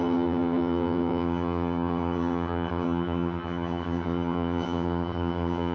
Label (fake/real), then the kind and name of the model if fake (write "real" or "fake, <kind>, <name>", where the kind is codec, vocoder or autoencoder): fake, vocoder, HiFi-GAN